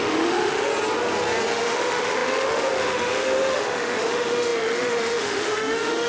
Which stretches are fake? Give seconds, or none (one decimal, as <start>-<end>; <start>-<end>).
0.0-0.7; 1.5-6.1